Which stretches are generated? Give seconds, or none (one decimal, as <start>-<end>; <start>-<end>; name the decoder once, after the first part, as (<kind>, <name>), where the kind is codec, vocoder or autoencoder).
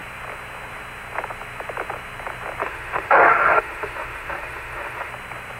2.6-5.1 (autoencoder, DAC-VAE)